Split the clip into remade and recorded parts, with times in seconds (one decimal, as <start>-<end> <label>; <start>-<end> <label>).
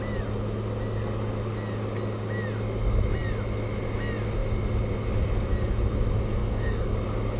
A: 0.0-6.4 recorded; 6.4-7.0 remade; 7.0-7.4 recorded